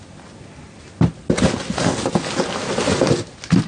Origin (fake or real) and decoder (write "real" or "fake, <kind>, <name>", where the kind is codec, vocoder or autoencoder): real